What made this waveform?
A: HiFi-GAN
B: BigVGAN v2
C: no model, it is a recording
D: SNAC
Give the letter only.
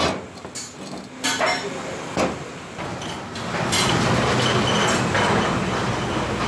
C